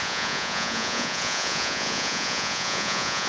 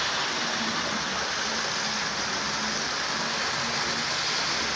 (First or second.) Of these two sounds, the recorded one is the second